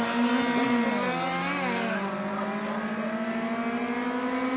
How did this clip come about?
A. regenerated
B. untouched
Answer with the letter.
B